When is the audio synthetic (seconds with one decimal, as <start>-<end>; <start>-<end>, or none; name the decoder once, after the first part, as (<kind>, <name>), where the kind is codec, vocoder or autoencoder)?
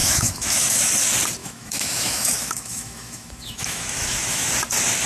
0.0-0.9 (autoencoder, DAC-VAE); 1.4-4.5